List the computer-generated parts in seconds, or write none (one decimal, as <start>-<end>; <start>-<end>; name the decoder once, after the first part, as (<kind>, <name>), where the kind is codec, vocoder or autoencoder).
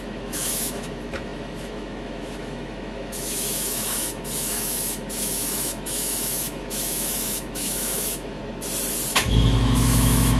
0.0-8.4 (autoencoder, DAC-VAE); 9.1-10.4